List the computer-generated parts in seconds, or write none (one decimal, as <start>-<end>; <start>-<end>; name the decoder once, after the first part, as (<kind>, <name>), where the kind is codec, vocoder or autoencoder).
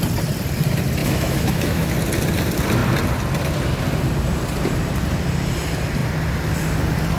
1.0-1.9 (autoencoder, DAC-VAE)